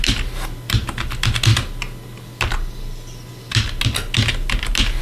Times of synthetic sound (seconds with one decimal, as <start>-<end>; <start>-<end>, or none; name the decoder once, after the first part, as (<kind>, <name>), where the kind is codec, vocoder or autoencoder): none

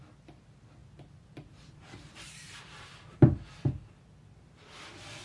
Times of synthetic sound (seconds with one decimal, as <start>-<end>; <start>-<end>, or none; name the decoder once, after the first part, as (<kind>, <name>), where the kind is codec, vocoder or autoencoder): 0.8-3.9 (vocoder, BigVGAN v2)

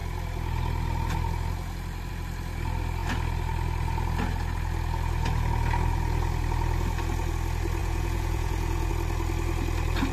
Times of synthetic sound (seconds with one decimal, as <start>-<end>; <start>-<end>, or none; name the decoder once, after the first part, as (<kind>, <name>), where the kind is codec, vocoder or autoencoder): 7.8-8.9 (vocoder, Vocos)

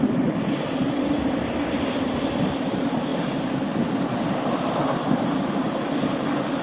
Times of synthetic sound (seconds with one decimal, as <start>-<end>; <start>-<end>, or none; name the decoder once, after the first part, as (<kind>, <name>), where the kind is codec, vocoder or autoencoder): none

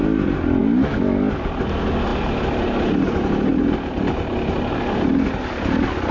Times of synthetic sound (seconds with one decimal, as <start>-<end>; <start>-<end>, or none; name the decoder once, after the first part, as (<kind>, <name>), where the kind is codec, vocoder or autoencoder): none

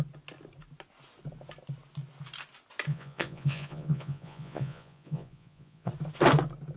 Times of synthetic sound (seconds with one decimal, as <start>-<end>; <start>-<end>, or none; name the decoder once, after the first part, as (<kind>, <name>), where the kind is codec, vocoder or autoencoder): 2.9-5.9 (vocoder, Vocos)